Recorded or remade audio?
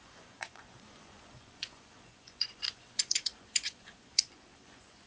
remade